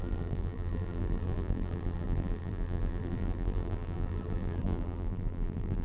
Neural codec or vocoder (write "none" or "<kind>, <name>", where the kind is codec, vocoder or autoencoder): vocoder, BigVGAN v2